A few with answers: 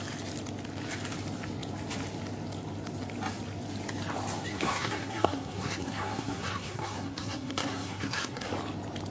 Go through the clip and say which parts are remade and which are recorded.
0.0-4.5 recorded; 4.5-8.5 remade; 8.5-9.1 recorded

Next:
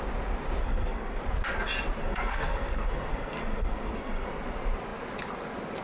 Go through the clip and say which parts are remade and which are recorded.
0.0-0.6 recorded; 0.6-1.2 remade; 1.2-2.0 recorded; 2.0-4.3 remade; 4.3-5.8 recorded

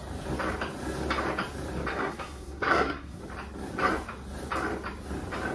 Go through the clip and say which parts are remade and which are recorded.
0.0-1.9 recorded; 1.9-3.2 remade; 3.2-5.5 recorded

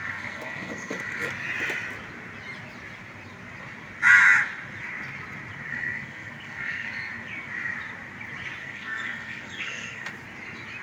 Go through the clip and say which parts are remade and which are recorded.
0.0-1.3 remade; 1.3-5.7 recorded; 5.7-7.1 remade; 7.1-8.6 recorded; 8.6-10.1 remade; 10.1-10.8 recorded

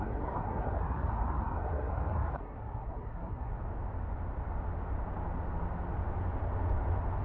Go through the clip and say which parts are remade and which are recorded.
0.0-3.5 remade; 3.5-7.2 recorded